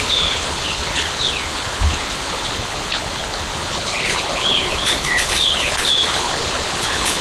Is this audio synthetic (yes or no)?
yes